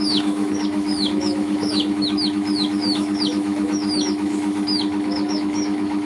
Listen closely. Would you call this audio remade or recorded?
remade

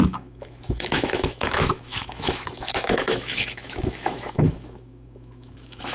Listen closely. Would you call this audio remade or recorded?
remade